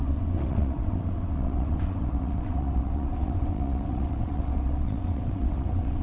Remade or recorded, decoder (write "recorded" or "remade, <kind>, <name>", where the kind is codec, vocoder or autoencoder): remade, vocoder, WaveNeXt